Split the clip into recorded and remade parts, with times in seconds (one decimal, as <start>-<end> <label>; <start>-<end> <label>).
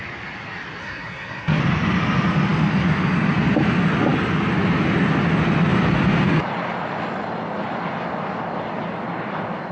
0.0-0.8 recorded; 0.8-1.6 remade; 1.6-9.7 recorded